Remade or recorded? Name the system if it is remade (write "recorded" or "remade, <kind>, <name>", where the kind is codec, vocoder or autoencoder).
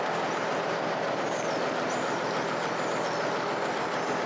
recorded